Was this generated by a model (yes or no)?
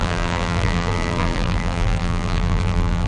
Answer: yes